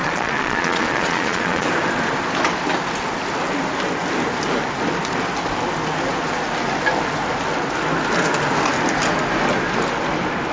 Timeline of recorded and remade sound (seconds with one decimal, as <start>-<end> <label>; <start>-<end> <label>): 0.0-1.7 remade; 1.7-10.5 recorded